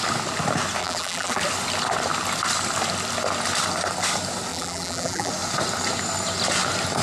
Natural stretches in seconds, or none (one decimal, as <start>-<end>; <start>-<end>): 0.0-0.8; 1.4-4.5; 5.3-7.0